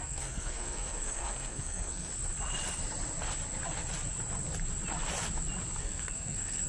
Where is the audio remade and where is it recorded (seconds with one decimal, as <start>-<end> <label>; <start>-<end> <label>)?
0.0-2.1 remade; 2.1-5.8 recorded; 5.8-6.7 remade